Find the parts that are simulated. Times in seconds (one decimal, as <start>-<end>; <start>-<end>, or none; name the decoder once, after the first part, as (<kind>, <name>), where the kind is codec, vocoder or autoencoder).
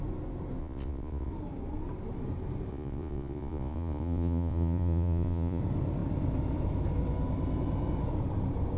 0.6-1.3 (vocoder, Vocos); 2.7-5.6